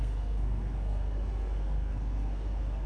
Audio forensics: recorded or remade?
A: remade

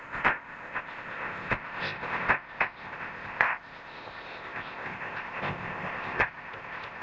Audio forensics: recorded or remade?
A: remade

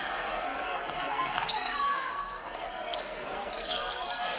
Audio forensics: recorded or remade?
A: remade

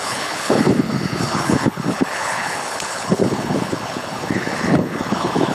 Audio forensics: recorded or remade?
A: remade